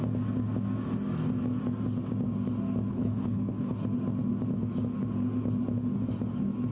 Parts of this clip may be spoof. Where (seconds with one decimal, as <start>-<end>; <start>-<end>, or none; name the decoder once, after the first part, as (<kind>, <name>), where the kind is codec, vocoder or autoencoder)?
2.9-3.7 (codec, HILCodec)